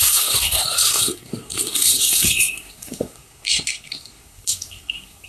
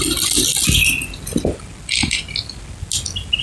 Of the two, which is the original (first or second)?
second